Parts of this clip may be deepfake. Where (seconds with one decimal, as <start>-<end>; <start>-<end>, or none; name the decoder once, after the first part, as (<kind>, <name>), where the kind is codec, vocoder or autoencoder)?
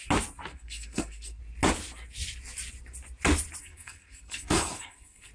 0.5-1.4 (codec, SNAC); 3.6-5.3